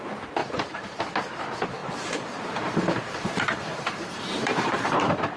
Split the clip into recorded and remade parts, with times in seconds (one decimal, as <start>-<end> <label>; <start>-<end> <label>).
0.0-0.4 recorded; 0.4-1.0 remade; 1.0-1.8 recorded; 1.8-5.0 remade; 5.0-5.4 recorded